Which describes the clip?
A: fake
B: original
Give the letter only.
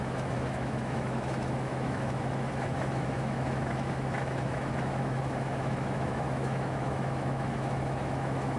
A